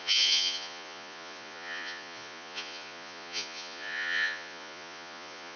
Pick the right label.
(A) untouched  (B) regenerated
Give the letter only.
B